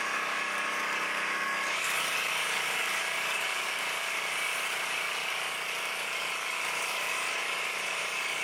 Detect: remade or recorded remade